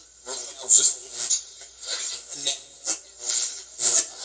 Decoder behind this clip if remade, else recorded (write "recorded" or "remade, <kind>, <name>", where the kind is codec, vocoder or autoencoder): recorded